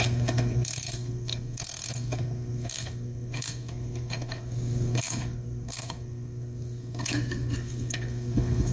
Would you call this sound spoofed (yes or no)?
yes